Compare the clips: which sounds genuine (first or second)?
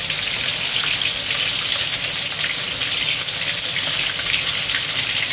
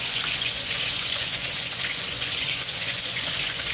first